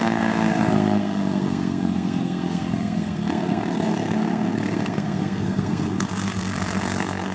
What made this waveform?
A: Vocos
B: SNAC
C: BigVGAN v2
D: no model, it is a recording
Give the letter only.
B